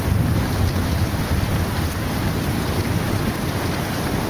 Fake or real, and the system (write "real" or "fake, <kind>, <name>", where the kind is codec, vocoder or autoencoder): real